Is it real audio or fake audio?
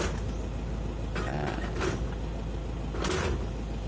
real